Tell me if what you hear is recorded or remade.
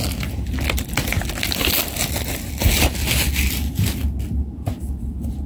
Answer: recorded